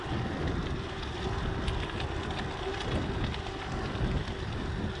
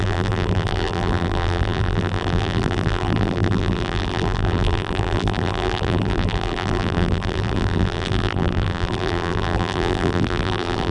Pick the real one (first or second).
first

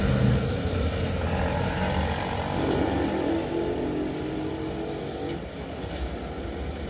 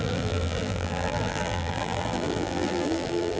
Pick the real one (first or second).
first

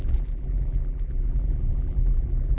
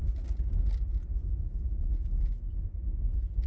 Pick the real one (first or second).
second